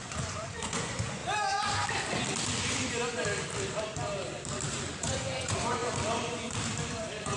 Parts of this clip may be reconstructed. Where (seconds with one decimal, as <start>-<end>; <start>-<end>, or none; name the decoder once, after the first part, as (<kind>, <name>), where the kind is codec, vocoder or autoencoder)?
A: 0.0-1.2 (vocoder, Vocos); 4.8-5.8; 7.0-7.4